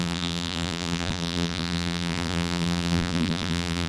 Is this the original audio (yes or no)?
no